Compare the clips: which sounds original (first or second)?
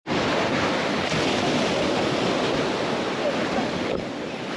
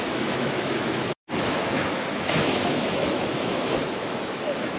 first